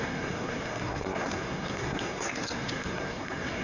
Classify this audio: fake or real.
fake